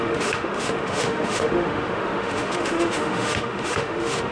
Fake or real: fake